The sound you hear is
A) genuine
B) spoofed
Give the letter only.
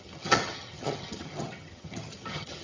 B